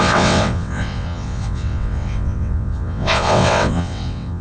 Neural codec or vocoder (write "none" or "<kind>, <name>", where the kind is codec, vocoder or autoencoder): vocoder, WaveNeXt